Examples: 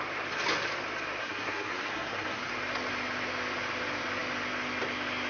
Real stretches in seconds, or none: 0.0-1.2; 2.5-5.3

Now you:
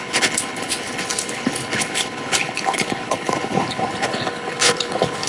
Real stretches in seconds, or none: none

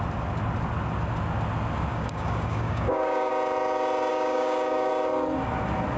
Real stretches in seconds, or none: 0.0-1.9; 3.3-4.1; 4.9-6.0

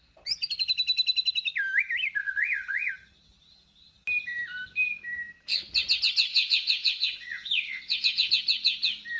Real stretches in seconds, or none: 0.0-2.2; 2.9-6.3; 8.3-9.2